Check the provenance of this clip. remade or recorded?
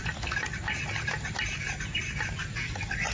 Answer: recorded